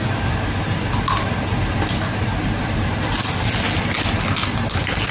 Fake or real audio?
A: real